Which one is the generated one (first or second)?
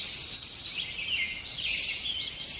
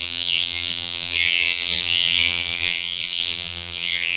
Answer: second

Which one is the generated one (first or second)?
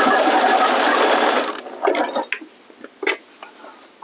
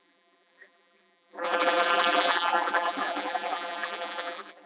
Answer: second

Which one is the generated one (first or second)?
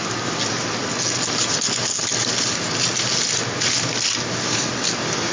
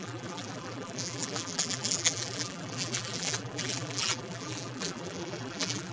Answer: second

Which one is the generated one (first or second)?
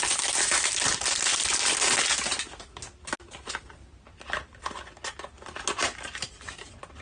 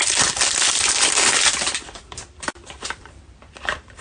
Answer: second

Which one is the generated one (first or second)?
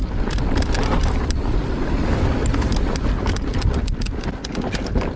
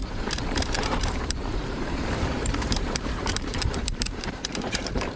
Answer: second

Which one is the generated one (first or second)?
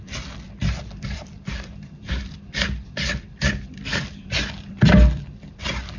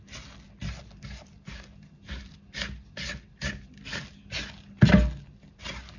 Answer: first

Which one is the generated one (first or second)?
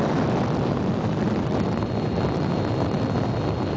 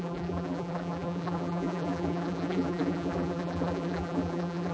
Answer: second